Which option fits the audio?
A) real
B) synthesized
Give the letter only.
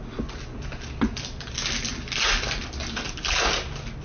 A